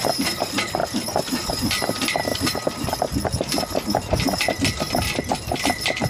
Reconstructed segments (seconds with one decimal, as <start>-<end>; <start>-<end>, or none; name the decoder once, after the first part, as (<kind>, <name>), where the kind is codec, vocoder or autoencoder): 0.0-2.3 (vocoder, BigVGAN v2); 4.8-6.1